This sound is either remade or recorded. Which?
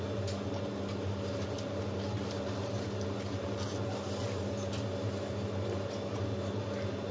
recorded